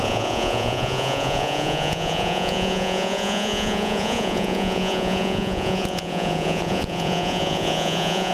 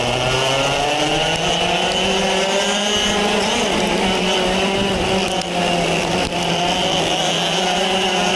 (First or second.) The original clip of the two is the second